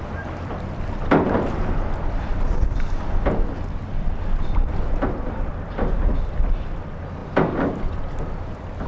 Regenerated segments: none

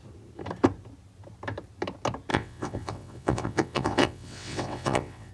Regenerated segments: 2.3-5.3 (vocoder, WaveNeXt)

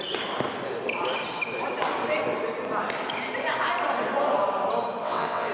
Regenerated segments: 5.0-5.5 (vocoder, WaveNeXt)

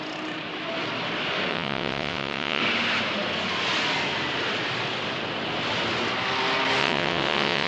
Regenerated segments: 1.5-2.6 (vocoder, WaveNeXt); 6.8-7.7

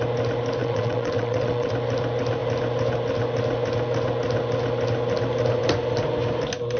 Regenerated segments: 0.6-1.7 (vocoder, WaveNeXt)

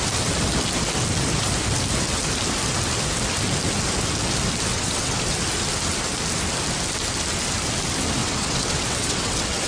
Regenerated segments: 4.7-5.2 (vocoder, WaveNeXt); 8.2-9.7

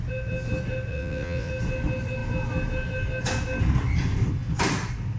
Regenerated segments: 0.9-1.5 (vocoder, WaveNeXt)

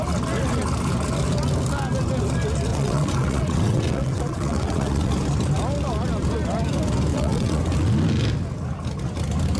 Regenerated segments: 2.7-5.1 (vocoder, WaveNeXt); 7.1-7.6